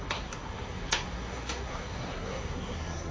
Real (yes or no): no